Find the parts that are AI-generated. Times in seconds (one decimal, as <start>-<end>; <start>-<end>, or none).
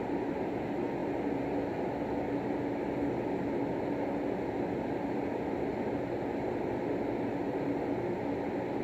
none